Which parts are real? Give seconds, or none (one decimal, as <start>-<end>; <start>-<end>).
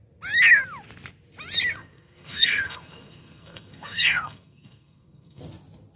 0.0-1.8; 5.4-6.0